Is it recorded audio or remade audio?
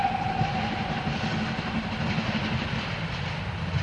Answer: recorded